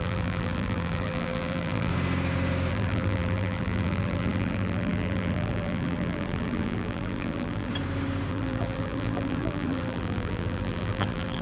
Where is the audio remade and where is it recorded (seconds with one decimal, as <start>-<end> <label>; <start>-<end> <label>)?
0.0-1.9 remade; 1.9-2.7 recorded; 2.7-7.7 remade; 7.7-8.3 recorded; 8.3-11.4 remade